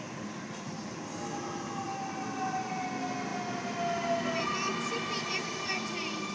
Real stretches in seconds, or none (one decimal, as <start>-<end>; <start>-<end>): 0.0-6.3